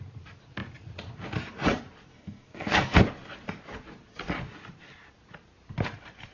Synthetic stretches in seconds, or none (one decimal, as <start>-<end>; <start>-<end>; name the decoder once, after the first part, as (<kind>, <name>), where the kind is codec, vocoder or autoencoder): 2.1-3.0 (codec, SNAC)